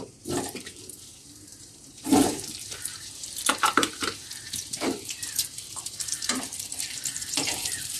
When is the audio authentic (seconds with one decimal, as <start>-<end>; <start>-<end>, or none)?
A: none